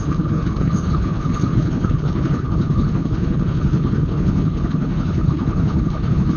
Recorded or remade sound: remade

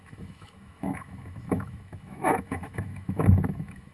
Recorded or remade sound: remade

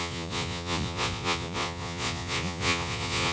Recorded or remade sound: remade